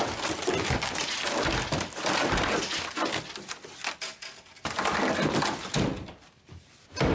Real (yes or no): yes